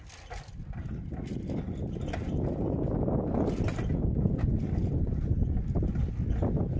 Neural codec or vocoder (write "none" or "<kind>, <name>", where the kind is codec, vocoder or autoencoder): none